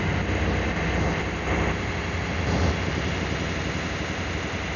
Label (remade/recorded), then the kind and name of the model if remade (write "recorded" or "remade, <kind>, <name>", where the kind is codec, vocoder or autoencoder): recorded